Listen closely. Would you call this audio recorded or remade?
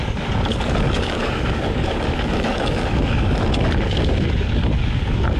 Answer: remade